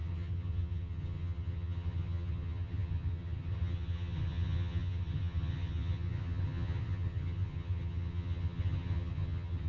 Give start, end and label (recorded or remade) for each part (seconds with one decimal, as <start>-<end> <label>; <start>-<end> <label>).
0.0-9.7 remade